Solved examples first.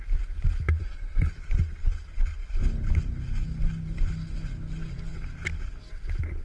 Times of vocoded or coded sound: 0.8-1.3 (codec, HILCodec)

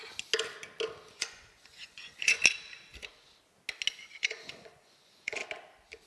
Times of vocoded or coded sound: 1.1-2.4 (vocoder, Vocos); 4.0-5.4

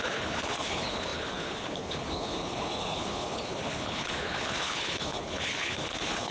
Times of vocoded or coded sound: 0.0-6.3 (codec, HILCodec)

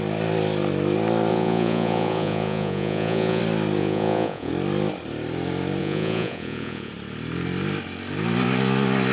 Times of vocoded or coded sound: 1.3-3.4 (vocoder, Vocos); 3.8-4.5; 5.8-6.9

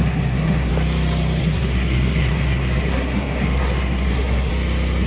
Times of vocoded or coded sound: 0.0-0.7 (codec, SNAC); 1.4-4.5